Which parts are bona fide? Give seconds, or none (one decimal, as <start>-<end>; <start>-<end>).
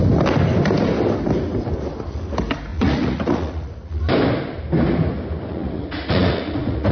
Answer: 0.0-2.7; 4.0-5.5